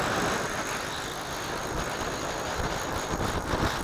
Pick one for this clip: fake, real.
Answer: real